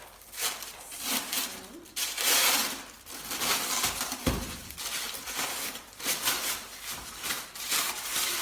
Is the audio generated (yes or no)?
yes